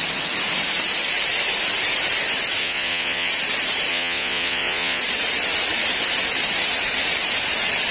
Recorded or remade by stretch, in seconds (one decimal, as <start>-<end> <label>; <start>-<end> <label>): 0.0-2.6 recorded; 2.6-3.3 remade; 3.3-3.9 recorded; 3.9-5.0 remade; 5.0-7.9 recorded

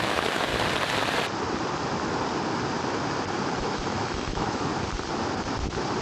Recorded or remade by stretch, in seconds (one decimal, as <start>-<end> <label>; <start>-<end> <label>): 0.0-0.5 remade; 0.5-3.6 recorded; 3.6-4.7 remade; 4.7-6.0 recorded

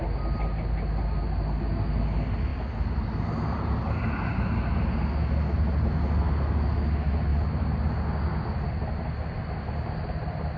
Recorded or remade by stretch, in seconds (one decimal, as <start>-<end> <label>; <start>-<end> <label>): 0.0-10.6 recorded

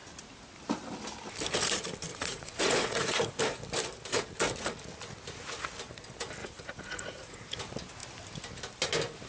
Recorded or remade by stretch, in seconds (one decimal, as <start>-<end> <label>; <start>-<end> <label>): 0.0-2.1 recorded; 2.1-3.4 remade; 3.4-6.4 recorded; 6.4-7.6 remade; 7.6-9.3 recorded

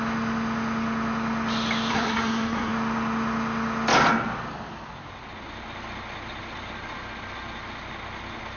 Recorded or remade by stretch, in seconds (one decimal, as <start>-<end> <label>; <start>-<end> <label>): 0.0-1.9 recorded; 1.9-2.7 remade; 2.7-8.6 recorded

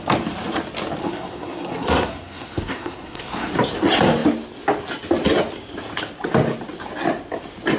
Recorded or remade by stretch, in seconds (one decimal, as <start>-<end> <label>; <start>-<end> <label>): 0.0-1.0 recorded; 1.0-3.5 remade; 3.5-7.8 recorded

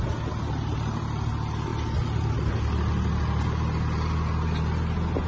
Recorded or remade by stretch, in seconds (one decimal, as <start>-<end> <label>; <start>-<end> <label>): 0.0-5.3 recorded